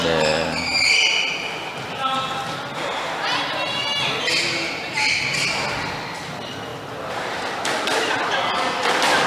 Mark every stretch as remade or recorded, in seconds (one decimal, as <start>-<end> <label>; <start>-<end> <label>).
0.0-9.3 recorded